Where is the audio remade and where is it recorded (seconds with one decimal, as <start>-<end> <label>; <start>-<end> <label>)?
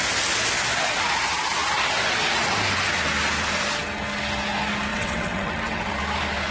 0.0-4.9 recorded; 4.9-5.9 remade; 5.9-6.5 recorded